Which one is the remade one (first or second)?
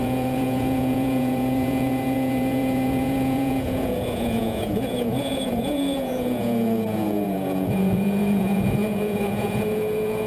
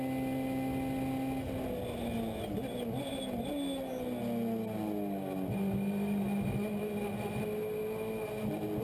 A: first